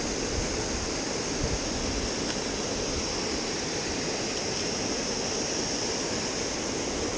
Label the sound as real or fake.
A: real